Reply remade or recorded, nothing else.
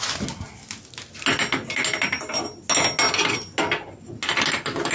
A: recorded